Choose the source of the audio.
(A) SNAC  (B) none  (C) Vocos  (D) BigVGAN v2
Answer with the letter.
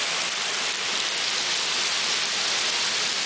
B